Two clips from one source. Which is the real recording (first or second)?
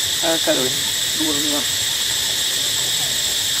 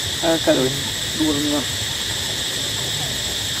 second